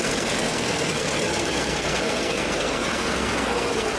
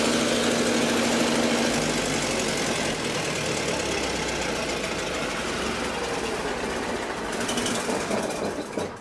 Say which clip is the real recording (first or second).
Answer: second